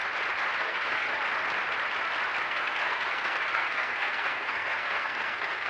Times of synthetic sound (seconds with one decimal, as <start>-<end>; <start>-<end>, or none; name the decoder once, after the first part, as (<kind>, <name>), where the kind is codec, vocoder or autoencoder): 0.6-1.1 (codec, SNAC); 2.4-5.7